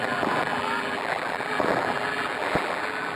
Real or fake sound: fake